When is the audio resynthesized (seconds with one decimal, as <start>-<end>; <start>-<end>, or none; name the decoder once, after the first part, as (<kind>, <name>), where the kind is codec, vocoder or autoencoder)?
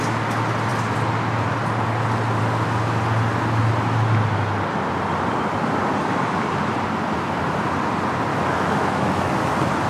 8.3-9.3 (autoencoder, DAC-VAE)